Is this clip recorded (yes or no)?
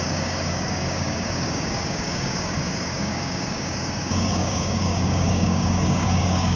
no